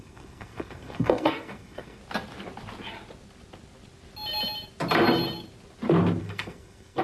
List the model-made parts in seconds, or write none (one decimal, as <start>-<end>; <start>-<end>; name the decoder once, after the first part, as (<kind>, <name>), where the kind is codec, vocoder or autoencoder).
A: 0.0-2.0 (codec, SNAC); 6.2-7.0